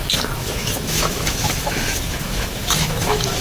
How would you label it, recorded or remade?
remade